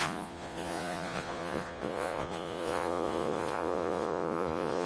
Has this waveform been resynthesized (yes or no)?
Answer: yes